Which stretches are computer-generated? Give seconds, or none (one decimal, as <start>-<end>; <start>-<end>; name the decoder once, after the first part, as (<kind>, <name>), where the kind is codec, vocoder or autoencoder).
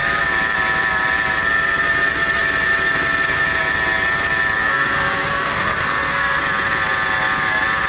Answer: 4.6-6.4 (codec, SNAC)